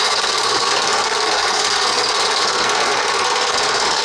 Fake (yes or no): yes